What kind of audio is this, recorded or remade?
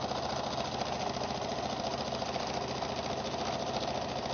recorded